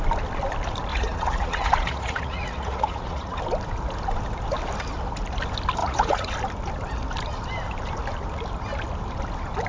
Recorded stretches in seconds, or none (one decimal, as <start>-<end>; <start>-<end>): 0.0-0.9; 3.4-5.8; 6.3-9.7